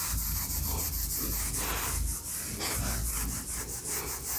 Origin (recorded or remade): recorded